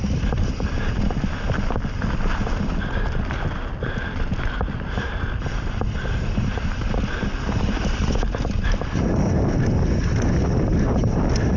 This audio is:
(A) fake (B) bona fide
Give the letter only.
B